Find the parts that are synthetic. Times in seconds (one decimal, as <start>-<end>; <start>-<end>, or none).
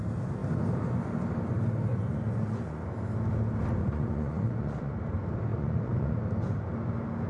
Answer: 1.9-2.8; 3.8-4.9; 5.5-6.2